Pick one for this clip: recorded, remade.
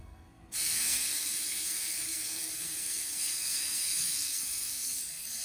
remade